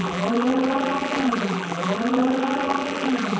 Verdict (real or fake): fake